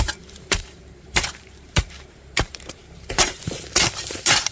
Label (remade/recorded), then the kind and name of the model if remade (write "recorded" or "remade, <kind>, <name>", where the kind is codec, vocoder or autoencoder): remade, vocoder, BigVGAN v2